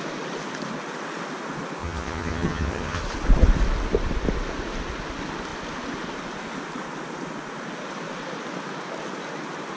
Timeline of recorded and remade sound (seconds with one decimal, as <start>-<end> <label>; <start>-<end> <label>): 0.0-1.8 recorded; 1.8-3.0 remade; 3.0-9.8 recorded